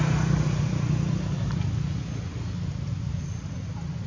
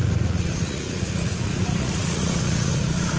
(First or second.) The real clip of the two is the first